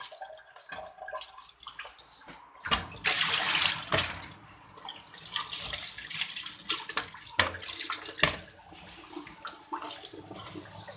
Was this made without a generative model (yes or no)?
yes